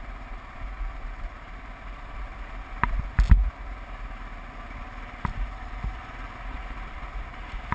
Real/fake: real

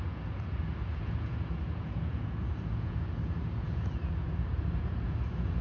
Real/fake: fake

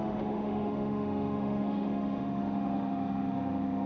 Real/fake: fake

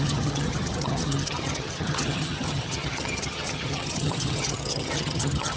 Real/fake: fake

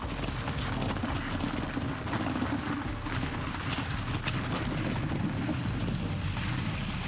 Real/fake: real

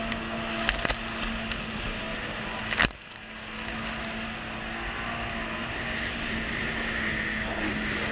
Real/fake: real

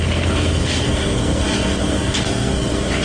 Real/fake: fake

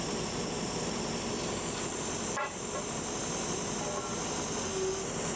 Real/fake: real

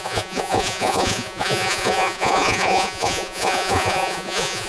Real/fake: fake